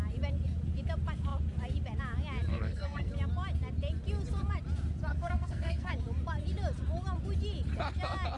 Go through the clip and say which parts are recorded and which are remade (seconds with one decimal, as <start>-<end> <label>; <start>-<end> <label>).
0.0-2.5 recorded; 2.5-3.1 remade; 3.1-5.1 recorded; 5.1-5.9 remade; 5.9-8.4 recorded